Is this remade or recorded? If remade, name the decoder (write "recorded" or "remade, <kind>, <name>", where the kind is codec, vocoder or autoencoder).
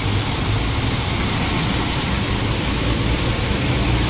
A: recorded